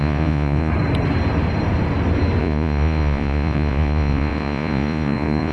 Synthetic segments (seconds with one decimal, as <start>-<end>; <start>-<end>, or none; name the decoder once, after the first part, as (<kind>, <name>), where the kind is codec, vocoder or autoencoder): 0.0-0.7 (vocoder, Vocos); 2.4-5.5